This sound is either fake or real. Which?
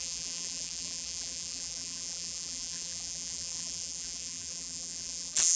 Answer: fake